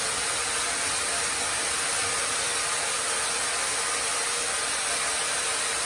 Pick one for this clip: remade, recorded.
recorded